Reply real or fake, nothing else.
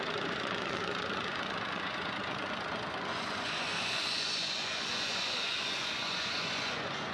fake